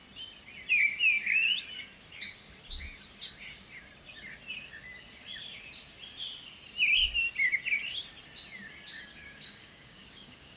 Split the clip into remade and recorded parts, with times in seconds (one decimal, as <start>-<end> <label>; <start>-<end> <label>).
0.0-9.1 recorded; 9.1-10.6 remade